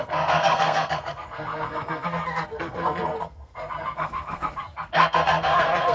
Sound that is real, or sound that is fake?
fake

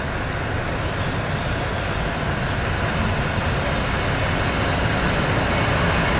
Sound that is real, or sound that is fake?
real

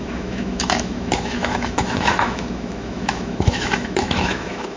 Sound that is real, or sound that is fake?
fake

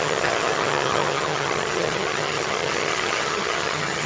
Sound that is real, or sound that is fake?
fake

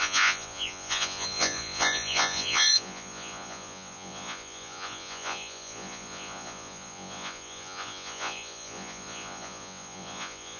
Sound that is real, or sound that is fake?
fake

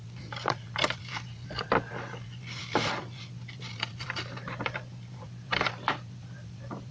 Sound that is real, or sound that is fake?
fake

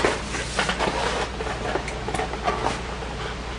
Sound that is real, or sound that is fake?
real